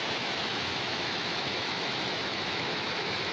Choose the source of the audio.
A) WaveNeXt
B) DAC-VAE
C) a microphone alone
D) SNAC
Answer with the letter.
B